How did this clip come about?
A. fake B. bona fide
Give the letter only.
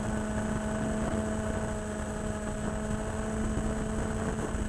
B